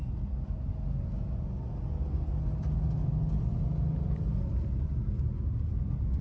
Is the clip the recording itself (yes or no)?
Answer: yes